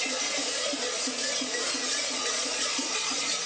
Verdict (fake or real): fake